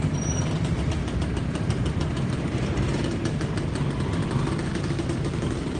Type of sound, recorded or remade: recorded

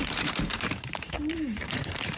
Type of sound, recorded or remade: remade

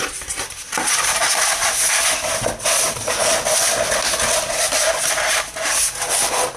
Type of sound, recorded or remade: recorded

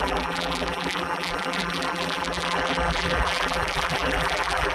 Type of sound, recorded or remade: remade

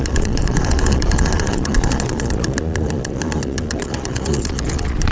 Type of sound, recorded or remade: remade